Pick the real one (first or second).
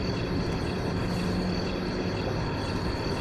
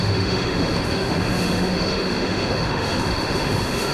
first